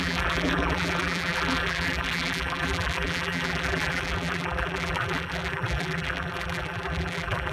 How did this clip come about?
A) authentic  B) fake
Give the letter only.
B